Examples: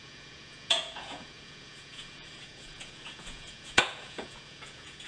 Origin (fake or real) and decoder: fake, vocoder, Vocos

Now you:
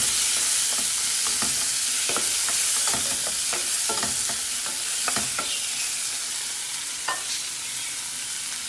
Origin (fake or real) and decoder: real